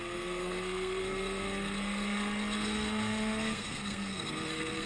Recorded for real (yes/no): no